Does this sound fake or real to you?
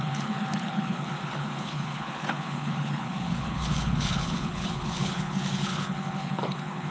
fake